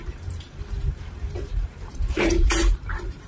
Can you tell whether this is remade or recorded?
remade